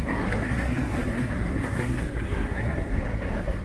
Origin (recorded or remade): remade